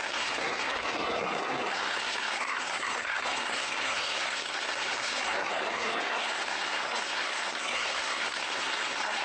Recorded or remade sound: remade